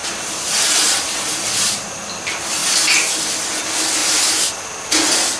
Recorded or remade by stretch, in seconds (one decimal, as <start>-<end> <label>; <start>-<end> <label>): 0.0-1.9 remade; 1.9-4.0 recorded; 4.0-4.5 remade; 4.5-5.4 recorded